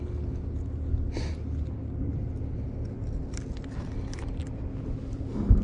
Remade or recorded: recorded